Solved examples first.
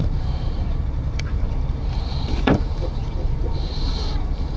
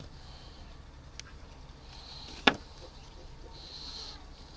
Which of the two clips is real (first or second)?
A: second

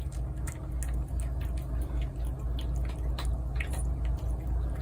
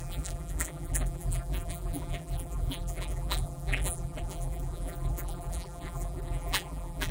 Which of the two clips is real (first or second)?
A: first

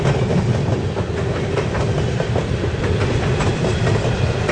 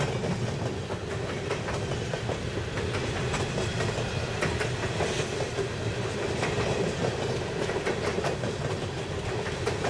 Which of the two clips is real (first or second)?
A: second